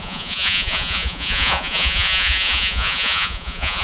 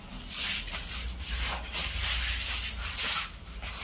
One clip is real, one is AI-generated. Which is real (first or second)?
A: second